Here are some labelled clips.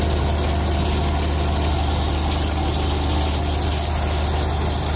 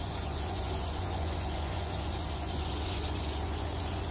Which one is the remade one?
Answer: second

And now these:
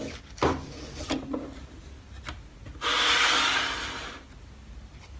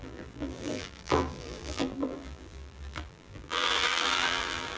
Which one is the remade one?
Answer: second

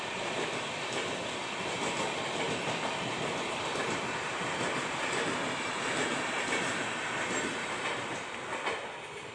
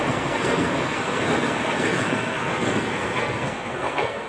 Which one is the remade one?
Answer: second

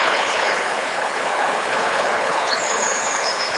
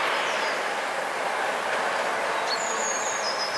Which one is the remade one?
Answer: first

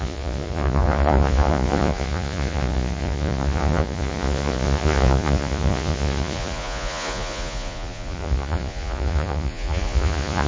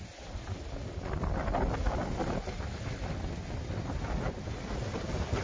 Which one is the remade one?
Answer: first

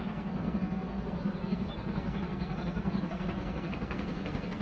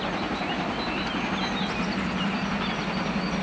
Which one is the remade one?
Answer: first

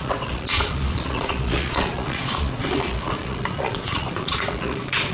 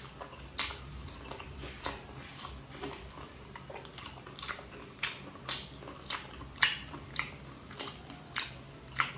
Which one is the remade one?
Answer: first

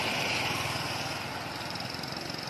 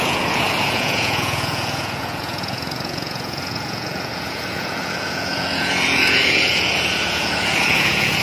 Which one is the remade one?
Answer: second